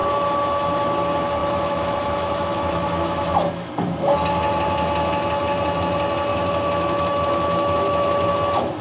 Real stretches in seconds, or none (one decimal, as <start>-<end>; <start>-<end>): 0.0-1.4; 3.7-6.3; 8.3-8.8